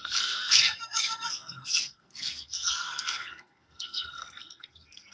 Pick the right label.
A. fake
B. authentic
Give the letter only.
A